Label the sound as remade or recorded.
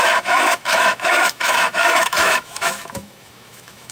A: remade